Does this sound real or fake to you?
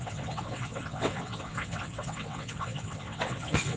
fake